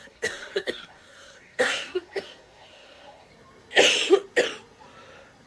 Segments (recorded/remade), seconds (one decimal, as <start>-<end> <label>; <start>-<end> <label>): 0.0-3.3 remade; 3.3-5.5 recorded